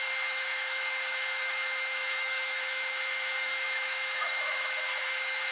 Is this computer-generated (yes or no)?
yes